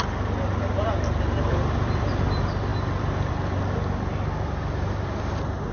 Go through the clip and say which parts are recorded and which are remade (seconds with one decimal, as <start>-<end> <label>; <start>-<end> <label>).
0.0-5.7 recorded